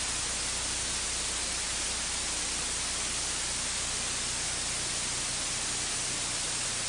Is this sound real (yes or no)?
yes